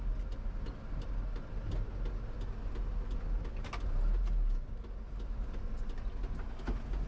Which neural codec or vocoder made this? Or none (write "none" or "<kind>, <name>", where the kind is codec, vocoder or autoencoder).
none